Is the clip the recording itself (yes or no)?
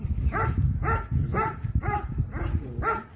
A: yes